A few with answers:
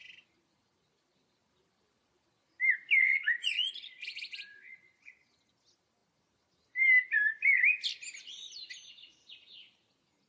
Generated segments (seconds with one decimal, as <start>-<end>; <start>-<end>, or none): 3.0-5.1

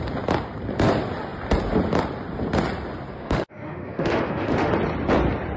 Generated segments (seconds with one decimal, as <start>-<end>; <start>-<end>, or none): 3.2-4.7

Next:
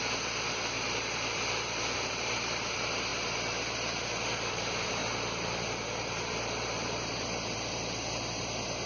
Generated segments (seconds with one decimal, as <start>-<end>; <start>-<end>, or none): 0.0-3.1; 4.5-5.0; 6.3-8.9